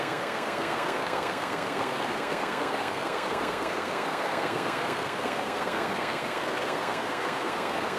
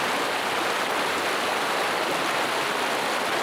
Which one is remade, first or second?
first